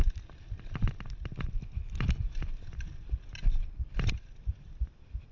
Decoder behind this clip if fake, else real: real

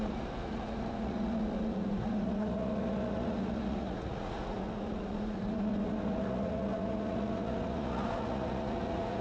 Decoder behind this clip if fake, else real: fake, vocoder, Vocos